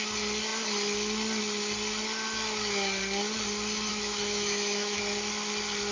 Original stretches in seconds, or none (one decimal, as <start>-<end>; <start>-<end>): 0.0-3.9; 5.0-5.9